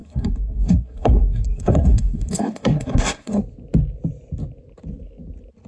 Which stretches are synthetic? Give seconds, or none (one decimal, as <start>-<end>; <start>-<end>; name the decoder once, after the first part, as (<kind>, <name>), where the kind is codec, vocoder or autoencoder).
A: 0.0-3.4 (codec, SNAC)